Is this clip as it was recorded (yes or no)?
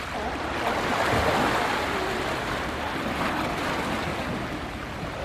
yes